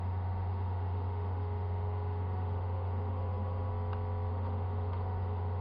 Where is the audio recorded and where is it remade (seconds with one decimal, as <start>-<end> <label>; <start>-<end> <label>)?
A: 0.0-3.7 remade; 3.7-4.3 recorded; 4.3-5.6 remade